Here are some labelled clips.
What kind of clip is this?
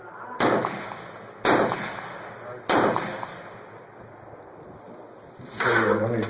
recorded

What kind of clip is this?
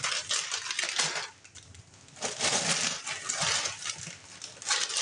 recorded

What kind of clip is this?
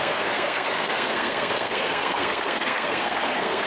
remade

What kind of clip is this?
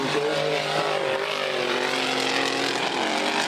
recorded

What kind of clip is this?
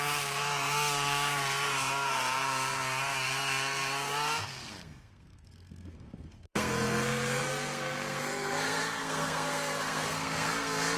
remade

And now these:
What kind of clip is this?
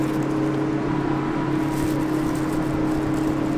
recorded